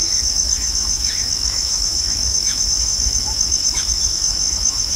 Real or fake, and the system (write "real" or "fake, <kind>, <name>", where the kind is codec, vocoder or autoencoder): fake, autoencoder, DAC-VAE